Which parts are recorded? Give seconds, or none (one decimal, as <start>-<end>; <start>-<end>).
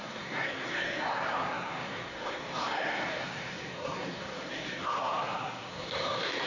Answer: none